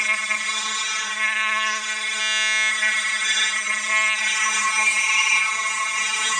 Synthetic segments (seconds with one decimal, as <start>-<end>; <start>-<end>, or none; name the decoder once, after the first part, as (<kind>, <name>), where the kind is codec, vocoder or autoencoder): 0.0-2.2 (codec, SNAC); 2.7-6.4